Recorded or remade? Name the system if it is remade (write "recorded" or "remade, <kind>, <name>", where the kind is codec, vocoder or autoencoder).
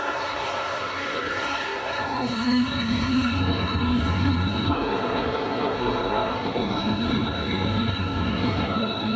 remade, codec, SNAC